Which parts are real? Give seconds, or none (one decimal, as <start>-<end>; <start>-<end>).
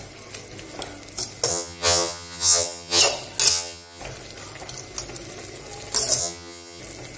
0.0-1.5; 3.0-3.5; 4.0-6.2; 6.8-7.2